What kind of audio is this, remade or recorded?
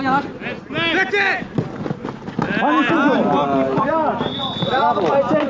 recorded